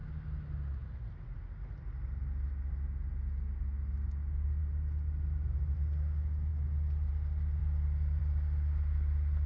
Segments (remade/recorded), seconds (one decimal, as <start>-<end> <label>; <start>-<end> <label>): 0.0-9.5 recorded